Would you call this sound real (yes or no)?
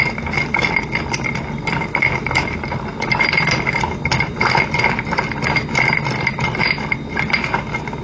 yes